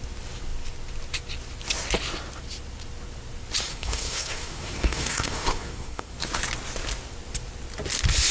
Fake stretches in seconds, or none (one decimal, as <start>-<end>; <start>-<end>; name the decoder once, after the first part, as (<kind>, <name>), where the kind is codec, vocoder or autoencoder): 3.7-6.1 (codec, SNAC)